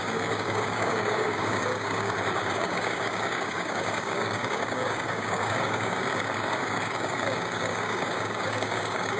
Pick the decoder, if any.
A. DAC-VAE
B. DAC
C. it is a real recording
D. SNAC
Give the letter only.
B